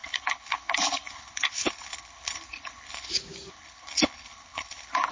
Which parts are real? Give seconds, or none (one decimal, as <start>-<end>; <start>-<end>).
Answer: 3.1-3.5